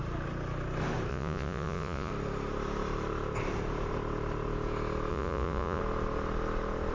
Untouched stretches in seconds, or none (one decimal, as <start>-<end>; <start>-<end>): 0.0-1.1; 2.1-5.1; 5.8-6.9

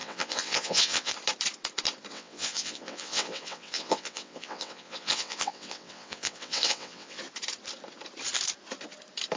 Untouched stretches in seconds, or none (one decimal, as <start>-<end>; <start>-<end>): 1.1-2.1; 7.2-9.4

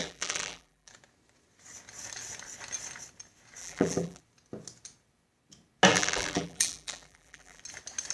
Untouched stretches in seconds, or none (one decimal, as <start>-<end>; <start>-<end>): 0.9-3.6; 4.2-5.9; 7.6-8.1

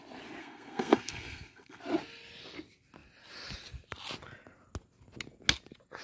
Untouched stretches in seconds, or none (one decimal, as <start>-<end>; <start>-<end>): 0.0-0.4; 1.8-6.0

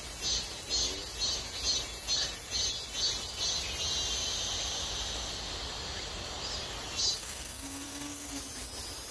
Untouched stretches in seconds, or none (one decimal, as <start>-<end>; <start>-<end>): 0.0-7.2; 8.4-9.1

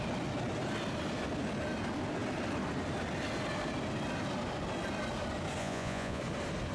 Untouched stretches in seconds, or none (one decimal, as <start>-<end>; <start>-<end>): 0.0-5.6; 6.2-6.7